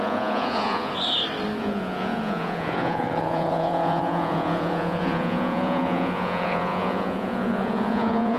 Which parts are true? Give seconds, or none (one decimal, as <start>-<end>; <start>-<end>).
0.9-1.6